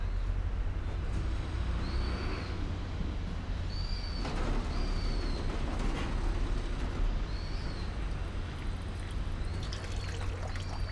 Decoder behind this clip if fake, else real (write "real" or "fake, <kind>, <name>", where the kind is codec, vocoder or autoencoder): real